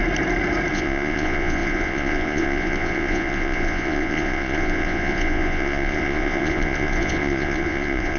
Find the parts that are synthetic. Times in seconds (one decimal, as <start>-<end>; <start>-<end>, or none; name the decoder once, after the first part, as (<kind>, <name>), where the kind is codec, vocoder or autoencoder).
0.7-8.2 (vocoder, Vocos)